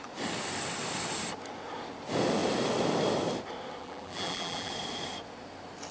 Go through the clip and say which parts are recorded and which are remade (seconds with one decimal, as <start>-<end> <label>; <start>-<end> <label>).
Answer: 0.0-3.8 recorded; 3.8-4.7 remade; 4.7-5.9 recorded